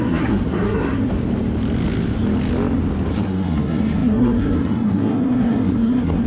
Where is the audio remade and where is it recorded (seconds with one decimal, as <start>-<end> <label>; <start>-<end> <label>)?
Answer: 0.0-1.1 remade; 1.1-3.1 recorded; 3.1-6.3 remade